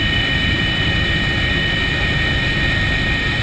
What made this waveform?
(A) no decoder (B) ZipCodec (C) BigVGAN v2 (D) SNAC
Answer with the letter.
C